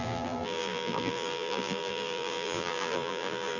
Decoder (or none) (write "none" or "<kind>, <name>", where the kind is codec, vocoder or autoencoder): vocoder, BigVGAN v2